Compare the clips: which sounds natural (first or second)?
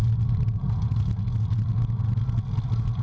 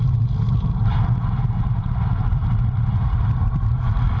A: first